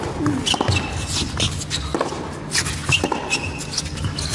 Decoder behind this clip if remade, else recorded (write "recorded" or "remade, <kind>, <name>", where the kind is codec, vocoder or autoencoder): recorded